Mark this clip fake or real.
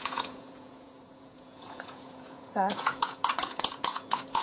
fake